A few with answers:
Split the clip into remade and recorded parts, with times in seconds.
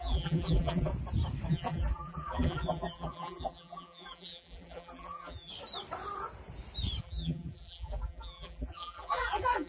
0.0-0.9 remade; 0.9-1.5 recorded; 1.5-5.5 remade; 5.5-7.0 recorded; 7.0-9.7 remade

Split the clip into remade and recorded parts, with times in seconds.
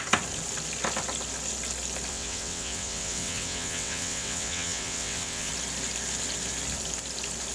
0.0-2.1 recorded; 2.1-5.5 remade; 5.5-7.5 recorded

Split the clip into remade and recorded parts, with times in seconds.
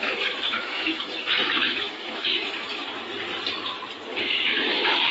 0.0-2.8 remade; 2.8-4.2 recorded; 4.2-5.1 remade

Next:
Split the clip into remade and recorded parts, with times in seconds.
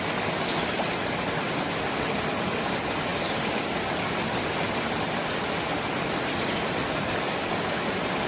0.0-8.3 recorded